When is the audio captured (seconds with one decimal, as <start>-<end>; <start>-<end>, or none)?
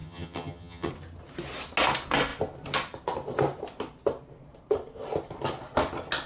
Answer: 0.9-6.3